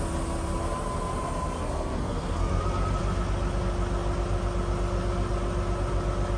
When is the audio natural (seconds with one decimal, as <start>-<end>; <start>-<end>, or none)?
0.0-1.2; 2.6-6.4